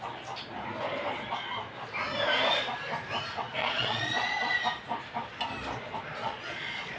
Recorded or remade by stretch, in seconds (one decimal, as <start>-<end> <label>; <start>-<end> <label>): 0.0-3.6 recorded; 3.6-4.6 remade; 4.6-6.2 recorded; 6.2-7.0 remade

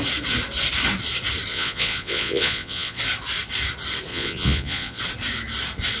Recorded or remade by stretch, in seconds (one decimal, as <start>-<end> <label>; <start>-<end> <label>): 0.0-1.5 recorded; 1.5-3.0 remade; 3.0-4.1 recorded; 4.1-5.0 remade; 5.0-6.0 recorded

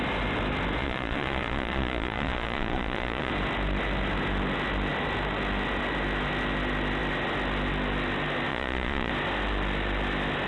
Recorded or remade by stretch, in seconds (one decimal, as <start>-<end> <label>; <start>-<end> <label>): 0.0-0.8 recorded; 0.8-3.3 remade; 3.3-8.5 recorded; 8.5-9.1 remade; 9.1-10.5 recorded

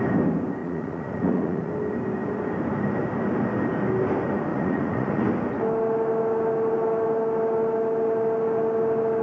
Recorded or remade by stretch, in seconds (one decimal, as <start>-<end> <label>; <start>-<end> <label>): 0.0-0.6 recorded; 0.6-1.7 remade; 1.7-4.5 recorded; 4.5-5.2 remade; 5.2-9.2 recorded

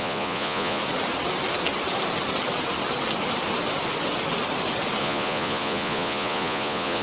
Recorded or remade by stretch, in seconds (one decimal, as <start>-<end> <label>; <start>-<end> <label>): 0.0-0.8 remade; 0.8-5.0 recorded; 5.0-7.0 remade

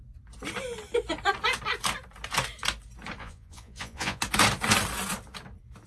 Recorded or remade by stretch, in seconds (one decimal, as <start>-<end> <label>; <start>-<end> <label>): 0.0-3.2 recorded; 3.2-4.2 remade; 4.2-5.9 recorded

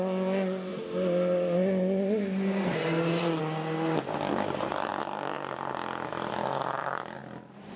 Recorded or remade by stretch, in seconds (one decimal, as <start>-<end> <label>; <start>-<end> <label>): 0.0-7.8 recorded

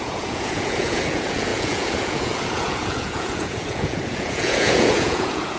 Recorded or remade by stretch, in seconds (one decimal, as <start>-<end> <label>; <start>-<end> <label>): 0.0-5.6 remade